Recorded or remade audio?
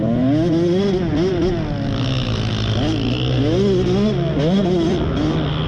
recorded